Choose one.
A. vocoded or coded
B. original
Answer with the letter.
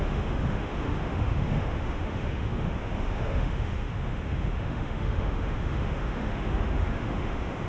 A